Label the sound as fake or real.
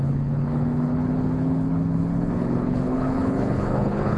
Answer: fake